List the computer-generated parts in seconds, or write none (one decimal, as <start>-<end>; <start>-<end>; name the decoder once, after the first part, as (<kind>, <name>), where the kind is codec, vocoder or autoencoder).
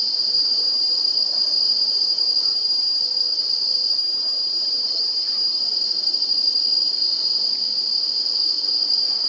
0.4-1.0 (vocoder, HiFi-GAN); 2.5-3.0; 4.0-5.6